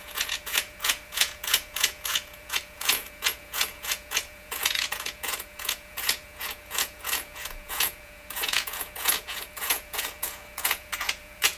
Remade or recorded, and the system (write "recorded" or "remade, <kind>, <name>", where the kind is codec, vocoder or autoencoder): remade, vocoder, Vocos